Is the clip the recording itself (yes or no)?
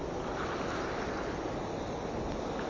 yes